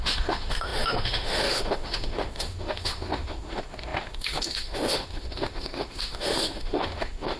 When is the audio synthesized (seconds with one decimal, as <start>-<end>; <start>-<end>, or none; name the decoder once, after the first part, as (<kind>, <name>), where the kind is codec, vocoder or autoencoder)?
0.0-7.4 (autoencoder, DAC-VAE)